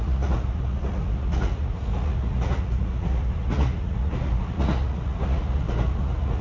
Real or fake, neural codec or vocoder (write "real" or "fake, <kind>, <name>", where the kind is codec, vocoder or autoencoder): fake, vocoder, Vocos